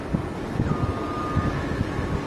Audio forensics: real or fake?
real